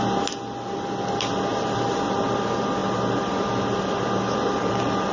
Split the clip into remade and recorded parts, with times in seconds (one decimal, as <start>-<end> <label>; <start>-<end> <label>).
0.0-5.1 recorded